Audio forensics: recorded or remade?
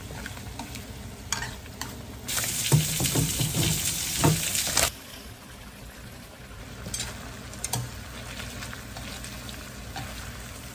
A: recorded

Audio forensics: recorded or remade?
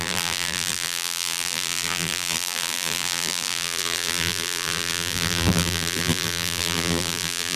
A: remade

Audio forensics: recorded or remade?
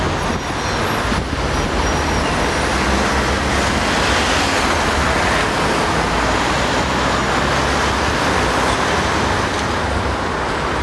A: recorded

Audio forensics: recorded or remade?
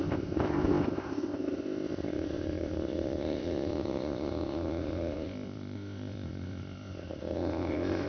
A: remade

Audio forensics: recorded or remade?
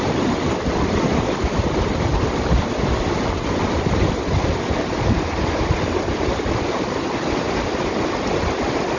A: recorded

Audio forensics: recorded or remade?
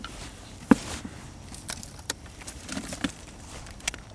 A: remade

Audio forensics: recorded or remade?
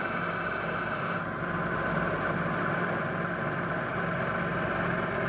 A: recorded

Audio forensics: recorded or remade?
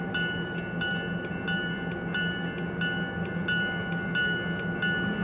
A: recorded